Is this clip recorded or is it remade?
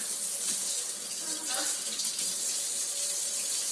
recorded